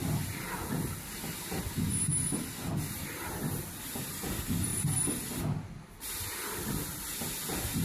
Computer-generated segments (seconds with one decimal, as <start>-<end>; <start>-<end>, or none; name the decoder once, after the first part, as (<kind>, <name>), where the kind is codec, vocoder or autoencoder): 0.0-1.6 (vocoder, BigVGAN v2)